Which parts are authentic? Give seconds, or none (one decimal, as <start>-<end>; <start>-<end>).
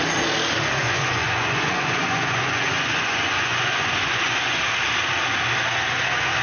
0.0-0.8; 4.6-6.4